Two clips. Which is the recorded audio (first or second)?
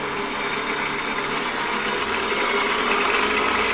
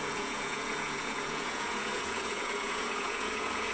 first